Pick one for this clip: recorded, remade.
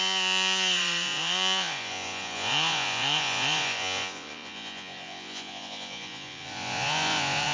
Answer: remade